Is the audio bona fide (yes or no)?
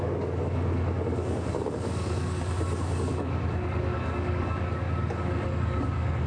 no